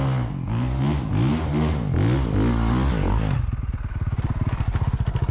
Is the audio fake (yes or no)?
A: no